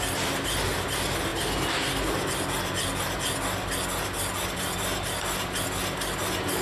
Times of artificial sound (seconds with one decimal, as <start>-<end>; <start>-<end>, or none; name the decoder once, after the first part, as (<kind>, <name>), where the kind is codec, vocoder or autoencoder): none